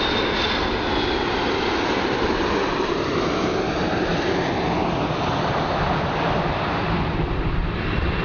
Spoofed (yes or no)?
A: no